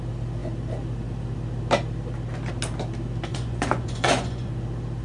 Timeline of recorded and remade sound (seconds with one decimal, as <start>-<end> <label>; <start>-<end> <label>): 0.0-3.3 recorded; 3.3-4.5 remade; 4.5-5.0 recorded